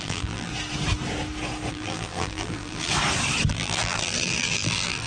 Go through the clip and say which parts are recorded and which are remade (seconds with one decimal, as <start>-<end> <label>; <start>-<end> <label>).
0.0-0.5 remade; 0.5-1.7 recorded; 1.7-2.9 remade; 2.9-3.5 recorded; 3.5-5.1 remade